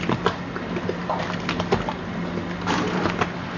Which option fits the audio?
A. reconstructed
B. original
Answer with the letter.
B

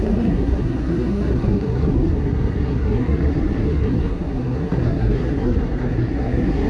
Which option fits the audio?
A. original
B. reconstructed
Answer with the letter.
B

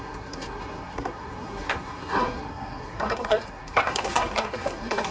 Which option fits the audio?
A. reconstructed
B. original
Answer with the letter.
A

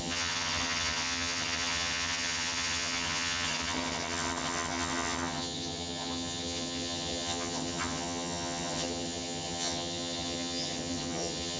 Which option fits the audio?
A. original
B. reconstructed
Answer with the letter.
B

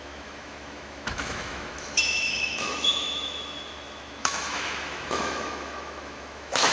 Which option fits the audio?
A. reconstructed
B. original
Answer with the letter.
A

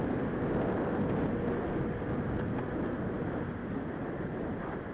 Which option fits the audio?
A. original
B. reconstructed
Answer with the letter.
A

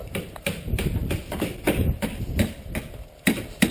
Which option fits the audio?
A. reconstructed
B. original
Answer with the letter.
B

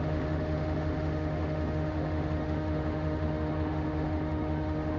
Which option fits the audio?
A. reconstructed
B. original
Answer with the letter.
A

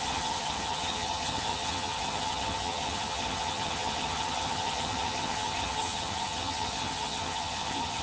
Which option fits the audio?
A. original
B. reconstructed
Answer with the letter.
B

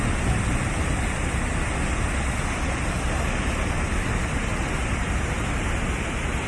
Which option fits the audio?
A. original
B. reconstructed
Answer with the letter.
A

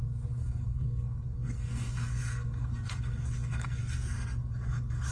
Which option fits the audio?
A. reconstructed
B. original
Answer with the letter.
A